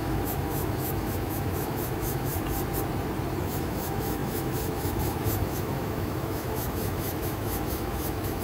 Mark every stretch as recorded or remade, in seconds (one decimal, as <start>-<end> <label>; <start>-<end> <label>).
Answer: 0.0-2.3 remade; 2.3-3.4 recorded; 3.4-8.4 remade